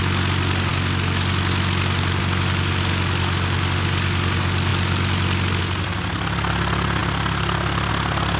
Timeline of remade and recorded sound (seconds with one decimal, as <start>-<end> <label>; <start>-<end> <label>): 0.0-8.4 recorded